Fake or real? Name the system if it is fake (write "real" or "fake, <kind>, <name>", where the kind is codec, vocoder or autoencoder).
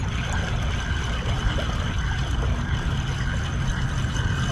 real